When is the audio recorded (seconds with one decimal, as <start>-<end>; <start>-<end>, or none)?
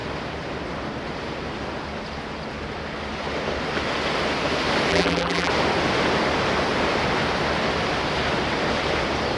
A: 0.0-4.9; 5.5-9.4